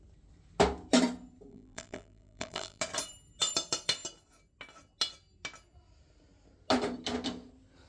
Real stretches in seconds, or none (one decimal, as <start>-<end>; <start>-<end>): 0.0-1.5; 2.8-7.9